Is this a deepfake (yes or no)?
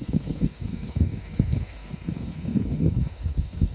yes